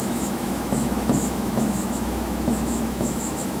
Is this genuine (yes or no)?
no